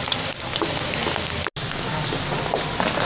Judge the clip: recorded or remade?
recorded